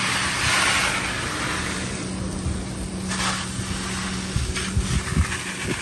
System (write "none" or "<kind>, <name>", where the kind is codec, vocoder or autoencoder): none